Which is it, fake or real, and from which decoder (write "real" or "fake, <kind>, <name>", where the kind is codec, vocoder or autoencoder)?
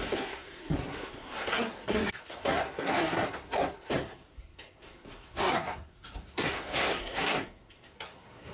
fake, codec, SNAC